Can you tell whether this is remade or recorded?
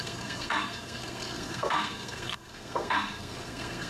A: remade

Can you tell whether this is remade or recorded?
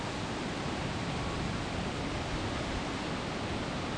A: recorded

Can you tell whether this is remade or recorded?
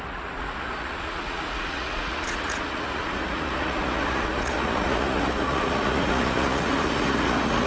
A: remade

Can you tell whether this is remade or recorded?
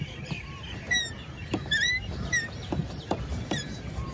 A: remade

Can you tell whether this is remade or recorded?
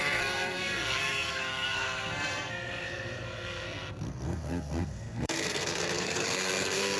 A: remade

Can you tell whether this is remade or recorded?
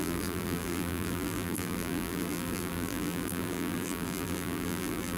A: remade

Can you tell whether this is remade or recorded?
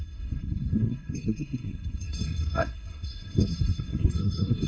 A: remade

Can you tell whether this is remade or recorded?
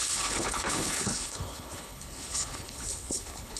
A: remade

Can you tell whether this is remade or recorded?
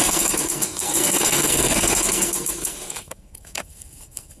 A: remade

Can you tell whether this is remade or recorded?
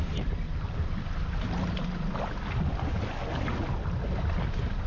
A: recorded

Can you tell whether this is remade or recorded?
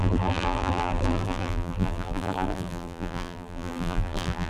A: remade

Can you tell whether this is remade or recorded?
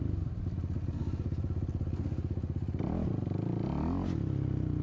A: recorded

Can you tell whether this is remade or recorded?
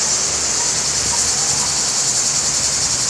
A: recorded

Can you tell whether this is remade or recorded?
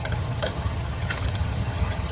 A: remade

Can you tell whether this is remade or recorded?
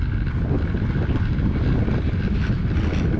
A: recorded